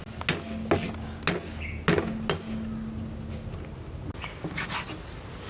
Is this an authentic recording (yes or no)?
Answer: yes